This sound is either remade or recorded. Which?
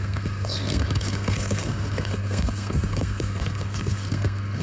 remade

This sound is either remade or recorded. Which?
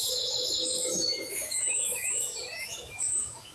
remade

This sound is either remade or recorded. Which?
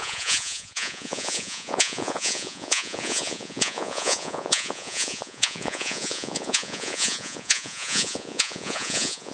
remade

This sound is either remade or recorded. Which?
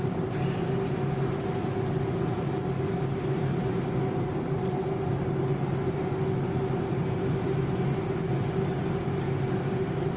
recorded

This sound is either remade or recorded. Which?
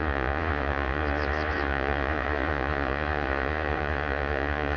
remade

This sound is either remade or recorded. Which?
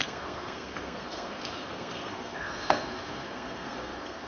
remade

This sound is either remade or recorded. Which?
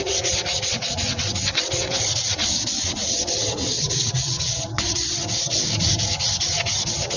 remade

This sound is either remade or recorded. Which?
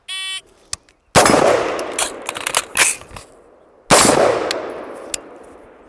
recorded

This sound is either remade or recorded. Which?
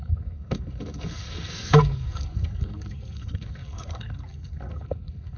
remade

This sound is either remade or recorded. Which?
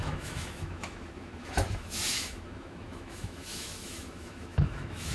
remade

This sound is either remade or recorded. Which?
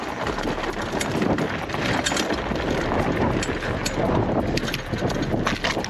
recorded